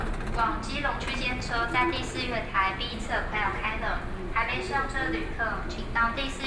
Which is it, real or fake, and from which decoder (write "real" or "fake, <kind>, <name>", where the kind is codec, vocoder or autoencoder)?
real